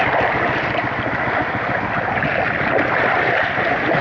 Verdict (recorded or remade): recorded